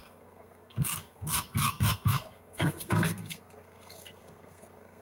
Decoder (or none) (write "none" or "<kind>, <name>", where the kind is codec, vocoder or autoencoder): codec, SNAC